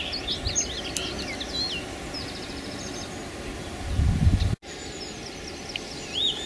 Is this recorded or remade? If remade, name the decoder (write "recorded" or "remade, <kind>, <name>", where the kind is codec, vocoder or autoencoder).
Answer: recorded